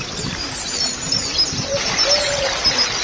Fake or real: real